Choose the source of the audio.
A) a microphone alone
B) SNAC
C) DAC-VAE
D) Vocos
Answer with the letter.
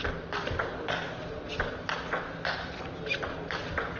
A